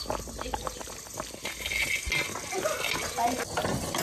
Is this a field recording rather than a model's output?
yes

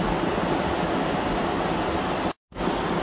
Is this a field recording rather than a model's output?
yes